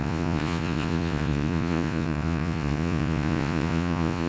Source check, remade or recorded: remade